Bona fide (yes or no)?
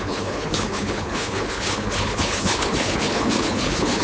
no